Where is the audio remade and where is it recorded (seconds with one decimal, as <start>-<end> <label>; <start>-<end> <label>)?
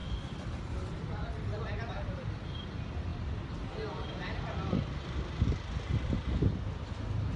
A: 0.0-1.9 remade; 1.9-3.1 recorded; 3.1-4.9 remade; 4.9-7.4 recorded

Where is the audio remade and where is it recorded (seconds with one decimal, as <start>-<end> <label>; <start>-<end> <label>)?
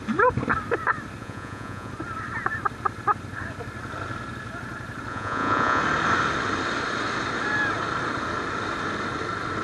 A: 0.0-1.2 recorded; 1.2-1.9 remade; 1.9-5.1 recorded; 5.1-5.8 remade; 5.8-9.6 recorded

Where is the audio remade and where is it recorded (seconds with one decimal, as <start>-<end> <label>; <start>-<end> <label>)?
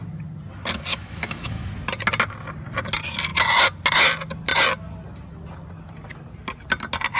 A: 0.0-0.9 recorded; 0.9-1.7 remade; 1.7-7.2 recorded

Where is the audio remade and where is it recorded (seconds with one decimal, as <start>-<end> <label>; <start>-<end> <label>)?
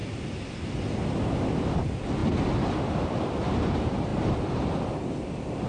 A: 0.0-2.2 recorded; 2.2-3.6 remade; 3.6-5.7 recorded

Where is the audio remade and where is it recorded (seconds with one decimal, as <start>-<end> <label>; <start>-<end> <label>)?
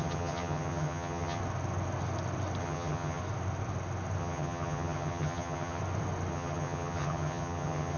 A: 0.0-1.4 remade; 1.4-2.6 recorded; 2.6-3.2 remade; 3.2-4.2 recorded; 4.2-5.8 remade; 5.8-6.3 recorded; 6.3-8.0 remade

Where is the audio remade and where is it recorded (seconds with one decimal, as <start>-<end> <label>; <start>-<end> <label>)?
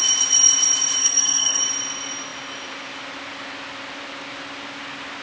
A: 0.0-1.0 recorded; 1.0-1.6 remade; 1.6-5.2 recorded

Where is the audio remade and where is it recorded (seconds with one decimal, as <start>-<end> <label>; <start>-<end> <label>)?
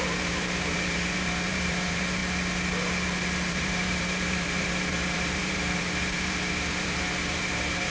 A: 0.0-2.2 remade; 2.2-3.5 recorded; 3.5-7.9 remade